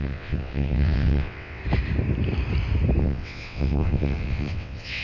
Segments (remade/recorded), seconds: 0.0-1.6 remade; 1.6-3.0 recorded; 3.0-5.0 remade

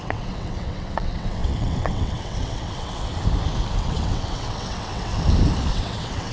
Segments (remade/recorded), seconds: 0.0-3.1 remade; 3.1-3.8 recorded; 3.8-5.1 remade; 5.1-5.7 recorded; 5.7-6.3 remade

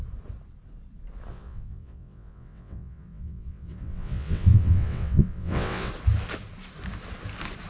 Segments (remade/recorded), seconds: 0.0-1.3 recorded; 1.3-5.9 remade; 5.9-7.7 recorded